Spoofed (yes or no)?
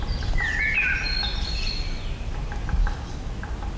no